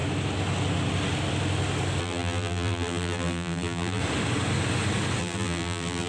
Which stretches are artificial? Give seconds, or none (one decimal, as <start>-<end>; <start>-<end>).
2.0-4.0; 5.2-6.1

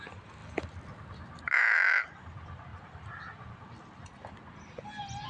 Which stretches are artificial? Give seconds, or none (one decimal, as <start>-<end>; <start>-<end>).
2.7-3.7

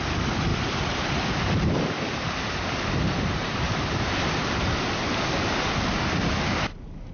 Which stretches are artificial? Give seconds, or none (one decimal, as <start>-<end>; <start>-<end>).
0.5-4.8

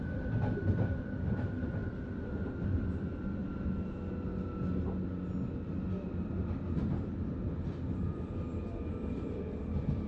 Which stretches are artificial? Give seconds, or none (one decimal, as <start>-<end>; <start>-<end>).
0.0-3.4; 5.6-10.1

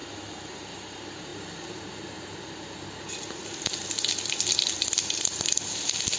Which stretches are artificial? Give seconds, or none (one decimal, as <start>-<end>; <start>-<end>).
1.3-1.8

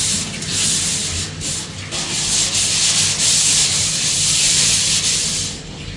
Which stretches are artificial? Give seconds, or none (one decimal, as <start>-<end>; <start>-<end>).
3.5-5.2